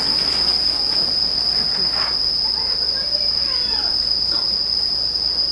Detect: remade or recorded recorded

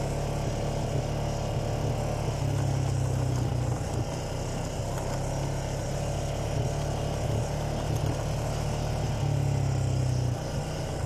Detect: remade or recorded recorded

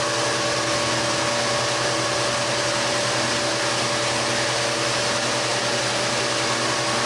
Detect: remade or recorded recorded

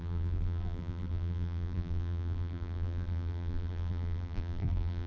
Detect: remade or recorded remade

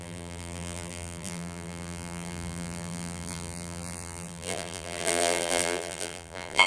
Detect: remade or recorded remade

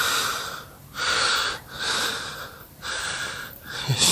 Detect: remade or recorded remade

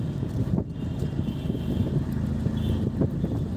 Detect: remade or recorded recorded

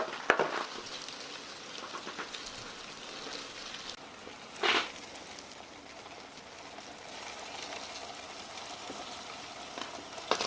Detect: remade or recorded recorded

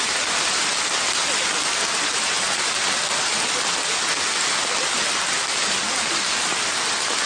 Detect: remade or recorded recorded